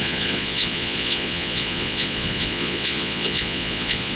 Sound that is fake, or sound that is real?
fake